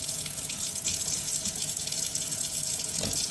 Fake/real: fake